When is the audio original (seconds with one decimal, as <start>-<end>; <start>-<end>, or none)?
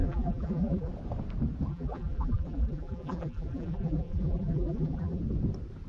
0.9-1.7; 5.2-5.9